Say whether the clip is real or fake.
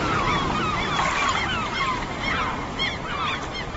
real